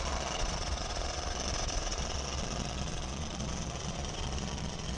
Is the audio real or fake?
fake